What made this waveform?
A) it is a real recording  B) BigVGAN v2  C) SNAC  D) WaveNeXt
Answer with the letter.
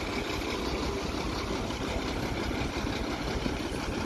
A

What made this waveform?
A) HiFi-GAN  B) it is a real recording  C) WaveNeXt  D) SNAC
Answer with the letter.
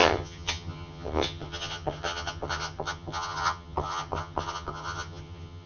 A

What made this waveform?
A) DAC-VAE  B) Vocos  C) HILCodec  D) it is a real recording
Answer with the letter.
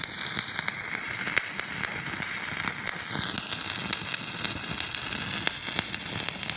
D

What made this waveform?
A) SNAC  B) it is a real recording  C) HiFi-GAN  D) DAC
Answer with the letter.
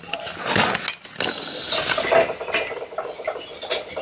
B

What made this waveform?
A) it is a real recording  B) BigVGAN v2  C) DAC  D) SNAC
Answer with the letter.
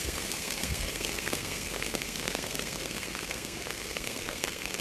D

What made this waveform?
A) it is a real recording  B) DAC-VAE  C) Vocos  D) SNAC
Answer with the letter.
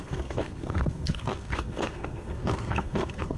D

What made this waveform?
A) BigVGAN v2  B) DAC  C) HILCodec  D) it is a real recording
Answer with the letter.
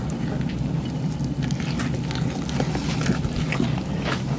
D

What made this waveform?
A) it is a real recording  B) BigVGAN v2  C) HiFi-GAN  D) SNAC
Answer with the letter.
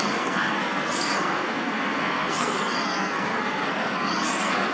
D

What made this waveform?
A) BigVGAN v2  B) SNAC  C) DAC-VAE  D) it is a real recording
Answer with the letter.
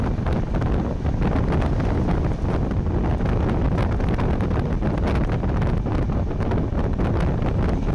D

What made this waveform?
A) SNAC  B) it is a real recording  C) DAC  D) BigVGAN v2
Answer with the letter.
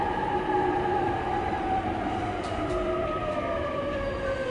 D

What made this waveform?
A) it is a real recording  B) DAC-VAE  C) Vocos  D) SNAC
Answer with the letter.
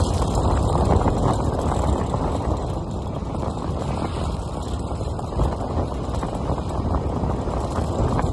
A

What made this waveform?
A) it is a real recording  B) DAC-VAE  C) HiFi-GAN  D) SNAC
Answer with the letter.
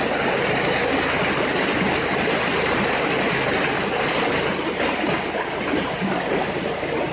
A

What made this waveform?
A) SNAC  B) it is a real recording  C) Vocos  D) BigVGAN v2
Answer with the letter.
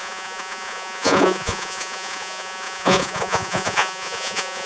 C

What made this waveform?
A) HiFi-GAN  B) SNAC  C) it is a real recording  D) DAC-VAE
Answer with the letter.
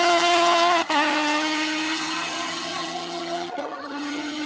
A